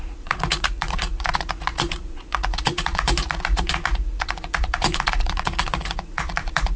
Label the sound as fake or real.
fake